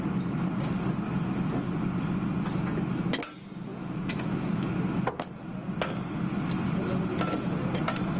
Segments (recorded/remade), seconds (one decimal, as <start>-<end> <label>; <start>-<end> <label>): 0.0-3.7 recorded; 3.7-4.7 remade; 4.7-8.2 recorded